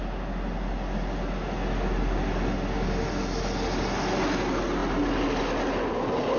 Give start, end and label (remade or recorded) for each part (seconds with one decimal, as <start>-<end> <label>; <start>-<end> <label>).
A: 0.0-6.4 recorded